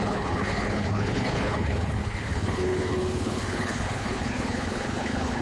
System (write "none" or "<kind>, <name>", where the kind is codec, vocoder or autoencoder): codec, HILCodec